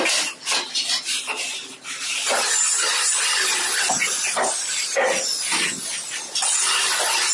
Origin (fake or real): real